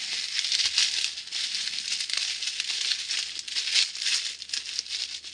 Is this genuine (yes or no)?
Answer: yes